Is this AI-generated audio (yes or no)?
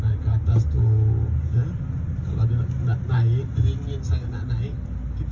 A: no